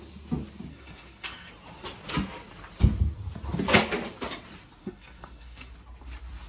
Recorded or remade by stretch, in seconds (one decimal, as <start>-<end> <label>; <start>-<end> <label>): 0.0-0.7 recorded; 0.7-1.5 remade; 1.5-4.8 recorded; 4.8-5.7 remade; 5.7-6.5 recorded